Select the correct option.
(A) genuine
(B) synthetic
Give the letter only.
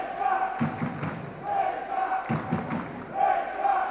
A